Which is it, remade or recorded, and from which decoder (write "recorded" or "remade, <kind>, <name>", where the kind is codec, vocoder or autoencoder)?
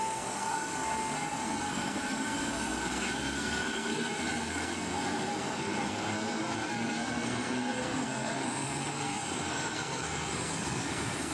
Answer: remade, codec, SNAC